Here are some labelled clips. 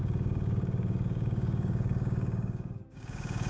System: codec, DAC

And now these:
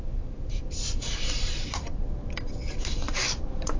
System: vocoder, BigVGAN v2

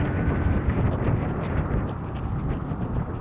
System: none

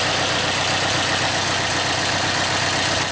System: none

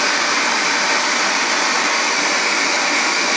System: vocoder, BigVGAN v2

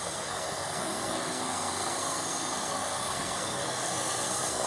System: codec, SNAC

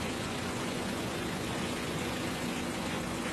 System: vocoder, Vocos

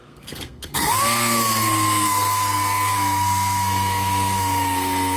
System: codec, SNAC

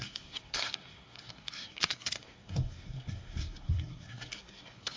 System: codec, SNAC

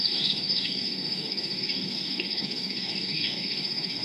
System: codec, DAC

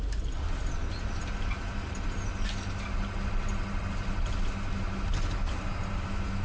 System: none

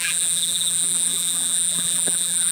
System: vocoder, BigVGAN v2